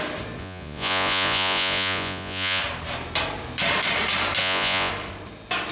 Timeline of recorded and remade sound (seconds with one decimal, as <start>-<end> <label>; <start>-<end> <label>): 0.0-0.4 recorded; 0.4-2.6 remade; 2.6-4.4 recorded; 4.4-4.9 remade; 4.9-5.7 recorded